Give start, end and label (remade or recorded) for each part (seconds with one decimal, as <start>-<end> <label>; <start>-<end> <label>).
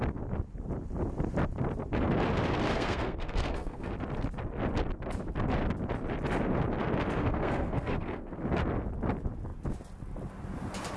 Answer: 0.0-2.7 recorded; 2.7-3.9 remade; 3.9-7.2 recorded; 7.2-8.4 remade; 8.4-11.0 recorded